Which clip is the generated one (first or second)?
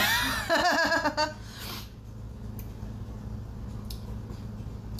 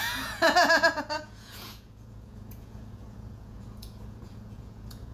second